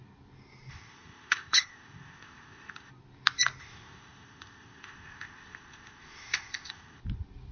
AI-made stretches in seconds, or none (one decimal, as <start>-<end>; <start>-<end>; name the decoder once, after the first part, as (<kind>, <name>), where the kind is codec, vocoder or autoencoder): 0.7-2.9 (codec, ZipCodec); 3.6-7.0